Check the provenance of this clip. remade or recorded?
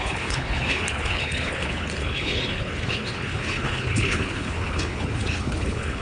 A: remade